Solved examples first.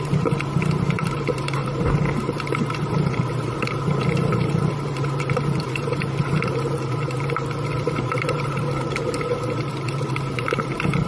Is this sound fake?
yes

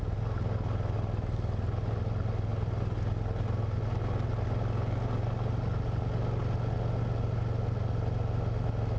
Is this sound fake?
no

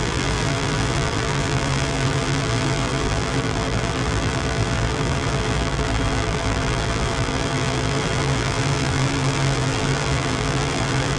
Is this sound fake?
yes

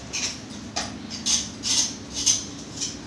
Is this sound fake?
no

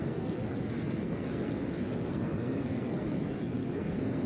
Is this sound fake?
yes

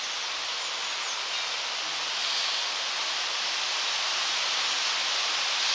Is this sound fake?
no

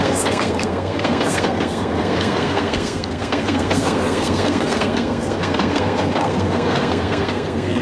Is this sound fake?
yes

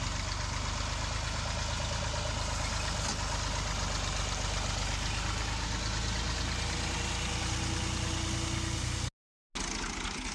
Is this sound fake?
no